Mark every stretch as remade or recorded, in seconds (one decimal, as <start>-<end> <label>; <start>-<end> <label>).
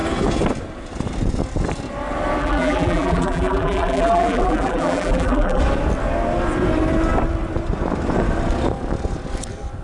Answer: 0.0-2.4 recorded; 2.4-5.6 remade; 5.6-9.8 recorded